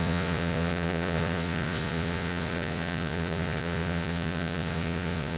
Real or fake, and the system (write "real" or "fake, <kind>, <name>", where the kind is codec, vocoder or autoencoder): fake, vocoder, Vocos